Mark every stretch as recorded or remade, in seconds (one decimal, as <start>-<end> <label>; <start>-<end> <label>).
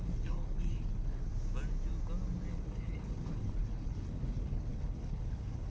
0.0-1.3 remade; 1.3-2.5 recorded; 2.5-5.7 remade